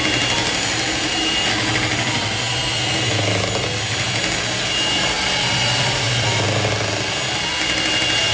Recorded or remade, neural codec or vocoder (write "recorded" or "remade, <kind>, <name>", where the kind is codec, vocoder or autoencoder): recorded